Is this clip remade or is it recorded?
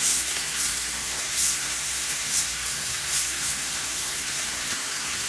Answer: remade